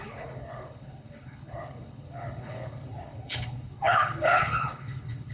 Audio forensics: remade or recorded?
remade